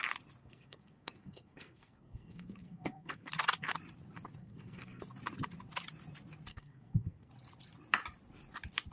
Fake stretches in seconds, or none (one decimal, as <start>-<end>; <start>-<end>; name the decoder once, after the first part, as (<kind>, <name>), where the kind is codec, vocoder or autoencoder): 0.4-3.3 (codec, SNAC); 4.4-5.0; 6.5-7.3